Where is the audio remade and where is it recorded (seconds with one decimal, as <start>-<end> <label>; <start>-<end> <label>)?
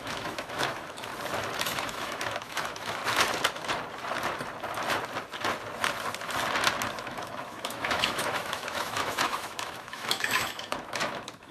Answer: 0.0-1.1 remade; 1.1-1.6 recorded; 1.6-3.0 remade; 3.0-7.0 recorded; 7.0-11.5 remade